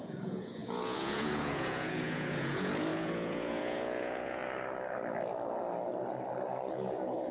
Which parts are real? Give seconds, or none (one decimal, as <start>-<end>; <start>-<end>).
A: 4.4-6.7

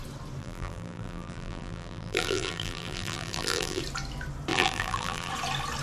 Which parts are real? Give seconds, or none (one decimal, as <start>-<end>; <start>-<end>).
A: 0.0-0.4; 3.8-4.5; 5.3-5.8